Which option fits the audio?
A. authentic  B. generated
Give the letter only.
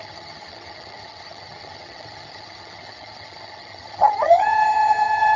B